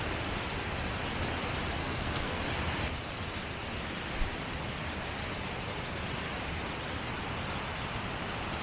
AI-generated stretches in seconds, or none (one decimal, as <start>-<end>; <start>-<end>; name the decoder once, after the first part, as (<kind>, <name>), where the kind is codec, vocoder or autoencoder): 1.8-2.4 (codec, SNAC)